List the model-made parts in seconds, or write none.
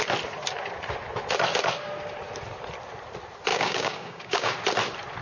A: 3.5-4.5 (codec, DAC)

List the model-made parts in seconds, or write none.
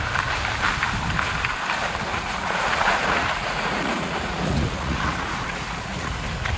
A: 2.1-6.1 (vocoder, Vocos)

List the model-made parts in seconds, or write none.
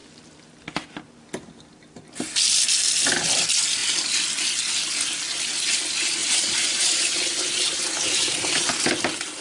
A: 6.2-8.7 (vocoder, BigVGAN v2)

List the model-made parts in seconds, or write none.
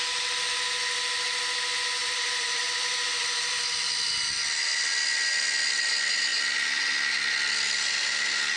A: 2.0-4.1 (vocoder, BigVGAN v2)